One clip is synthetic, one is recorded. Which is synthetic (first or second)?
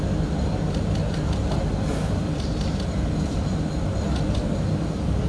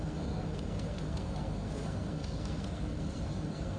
second